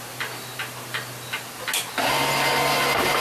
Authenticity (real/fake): real